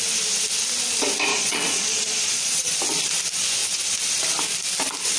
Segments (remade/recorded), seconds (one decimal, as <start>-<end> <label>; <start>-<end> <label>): 0.0-1.3 recorded; 1.3-2.8 remade; 2.8-5.2 recorded